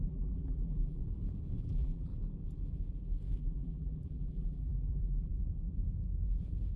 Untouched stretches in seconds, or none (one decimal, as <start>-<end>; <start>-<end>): 1.0-1.6; 2.1-3.4; 5.3-6.8